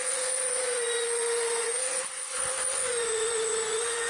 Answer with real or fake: fake